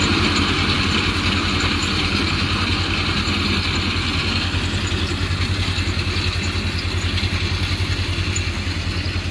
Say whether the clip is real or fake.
real